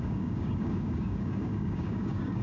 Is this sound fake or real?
fake